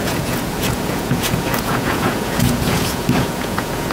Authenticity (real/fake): fake